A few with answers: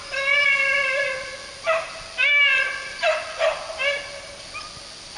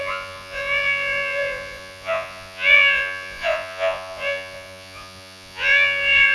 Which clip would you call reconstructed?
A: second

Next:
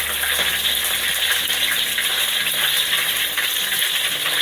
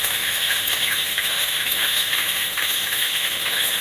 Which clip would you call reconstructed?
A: second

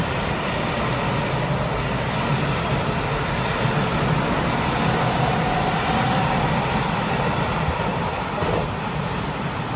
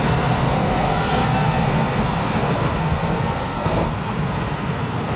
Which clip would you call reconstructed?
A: second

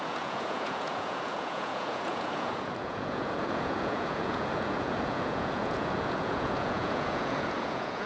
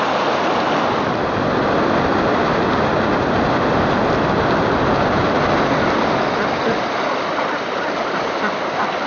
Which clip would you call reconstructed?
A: first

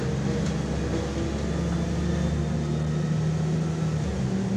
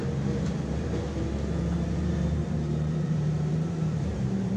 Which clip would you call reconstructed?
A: second